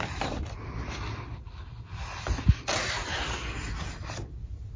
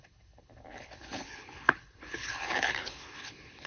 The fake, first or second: second